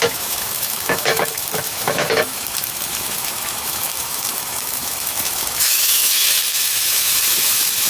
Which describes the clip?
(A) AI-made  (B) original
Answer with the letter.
A